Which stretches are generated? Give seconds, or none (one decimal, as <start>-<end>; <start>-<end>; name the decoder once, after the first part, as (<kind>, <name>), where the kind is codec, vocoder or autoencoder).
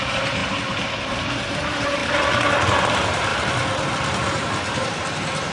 0.0-0.4 (vocoder, BigVGAN v2); 1.5-2.0; 2.8-3.3; 3.9-5.5